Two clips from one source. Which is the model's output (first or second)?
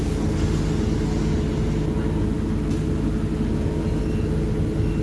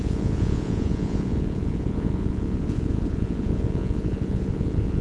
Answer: second